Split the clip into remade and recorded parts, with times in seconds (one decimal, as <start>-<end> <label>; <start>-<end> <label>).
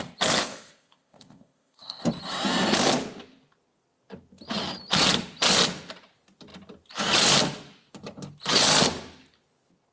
0.0-0.4 recorded; 0.4-2.0 remade; 2.0-9.9 recorded